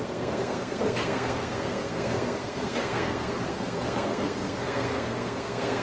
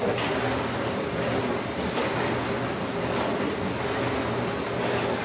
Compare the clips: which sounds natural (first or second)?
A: second